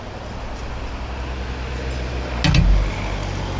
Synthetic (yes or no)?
no